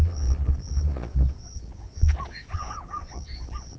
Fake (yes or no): yes